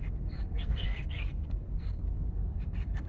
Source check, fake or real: fake